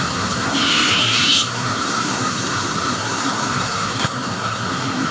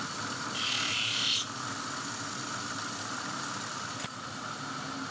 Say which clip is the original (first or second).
second